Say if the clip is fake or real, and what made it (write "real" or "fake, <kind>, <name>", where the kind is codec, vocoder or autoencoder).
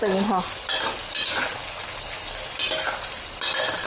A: real